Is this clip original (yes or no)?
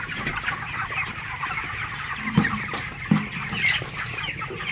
yes